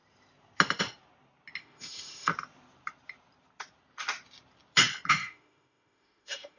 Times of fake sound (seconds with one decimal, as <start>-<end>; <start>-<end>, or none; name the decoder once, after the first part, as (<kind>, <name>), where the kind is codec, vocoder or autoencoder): 1.6-2.3 (autoencoder, DAC-VAE); 5.1-6.6